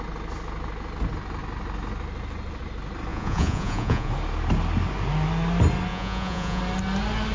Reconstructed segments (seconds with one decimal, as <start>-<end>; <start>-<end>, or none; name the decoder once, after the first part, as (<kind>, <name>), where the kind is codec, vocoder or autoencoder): 3.1-4.1 (vocoder, Vocos); 5.9-6.6